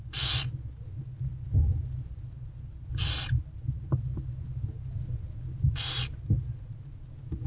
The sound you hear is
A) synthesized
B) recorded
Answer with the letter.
B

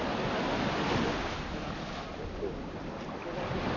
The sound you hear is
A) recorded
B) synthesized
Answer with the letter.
A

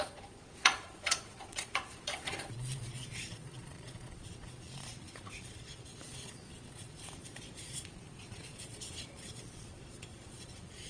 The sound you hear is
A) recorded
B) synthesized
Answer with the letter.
B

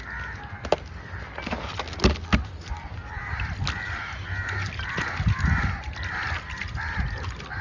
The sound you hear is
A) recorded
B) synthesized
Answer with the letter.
A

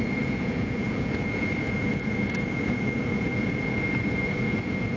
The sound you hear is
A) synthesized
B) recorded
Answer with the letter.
A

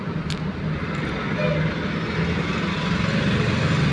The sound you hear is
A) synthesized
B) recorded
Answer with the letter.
B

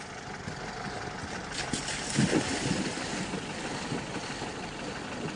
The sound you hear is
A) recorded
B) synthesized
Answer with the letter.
A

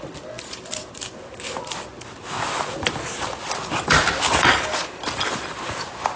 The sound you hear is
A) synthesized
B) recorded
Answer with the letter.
B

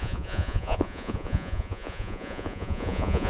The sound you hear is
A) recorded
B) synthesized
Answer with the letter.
B